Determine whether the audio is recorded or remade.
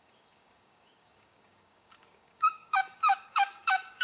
remade